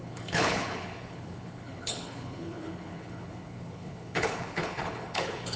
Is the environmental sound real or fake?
fake